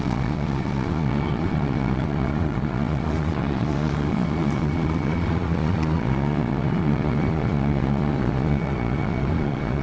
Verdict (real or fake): fake